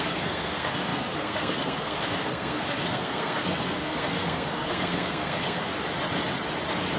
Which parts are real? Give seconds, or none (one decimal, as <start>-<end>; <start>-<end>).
5.7-7.0